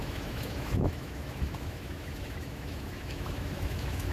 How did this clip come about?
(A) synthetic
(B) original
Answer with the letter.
A